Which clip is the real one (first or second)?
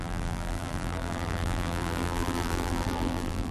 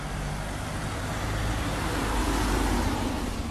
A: second